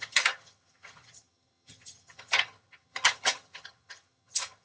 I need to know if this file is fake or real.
fake